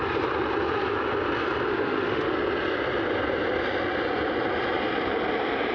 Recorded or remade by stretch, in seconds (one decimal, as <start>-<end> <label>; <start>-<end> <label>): 0.0-1.7 recorded; 1.7-2.3 remade; 2.3-5.7 recorded